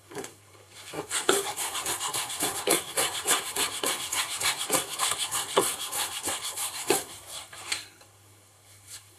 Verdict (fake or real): fake